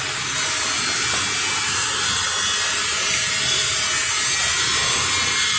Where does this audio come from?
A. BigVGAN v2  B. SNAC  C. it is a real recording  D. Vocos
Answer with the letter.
C